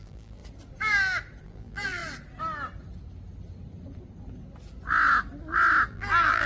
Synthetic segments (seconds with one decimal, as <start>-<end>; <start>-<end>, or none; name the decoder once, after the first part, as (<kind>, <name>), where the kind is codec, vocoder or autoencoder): 0.0-0.4 (vocoder, BigVGAN v2); 1.4-2.0; 5.9-6.5